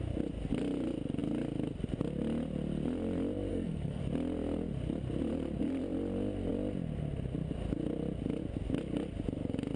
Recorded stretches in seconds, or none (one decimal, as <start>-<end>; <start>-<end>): 0.0-3.5; 4.0-9.8

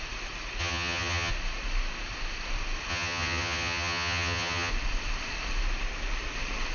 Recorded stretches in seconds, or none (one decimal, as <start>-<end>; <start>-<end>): 0.0-0.6; 1.3-2.9; 4.7-6.7

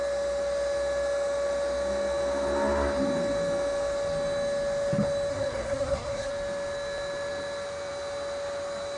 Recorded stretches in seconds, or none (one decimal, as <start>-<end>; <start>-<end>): 0.0-5.3; 6.3-9.0

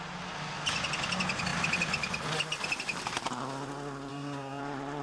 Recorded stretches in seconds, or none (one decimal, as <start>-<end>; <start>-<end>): 0.0-4.1; 4.6-5.0

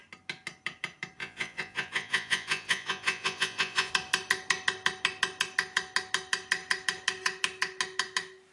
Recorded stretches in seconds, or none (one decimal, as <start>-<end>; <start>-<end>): 0.0-1.2; 3.9-8.5